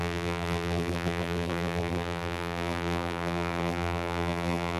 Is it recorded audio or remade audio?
remade